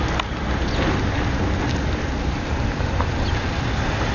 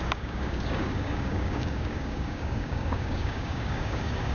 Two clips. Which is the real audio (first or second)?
first